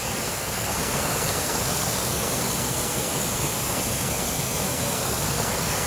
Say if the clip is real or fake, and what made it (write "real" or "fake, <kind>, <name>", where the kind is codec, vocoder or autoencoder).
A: fake, codec, SNAC